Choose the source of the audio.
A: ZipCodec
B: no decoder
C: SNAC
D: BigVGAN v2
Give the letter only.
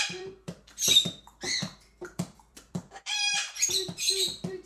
D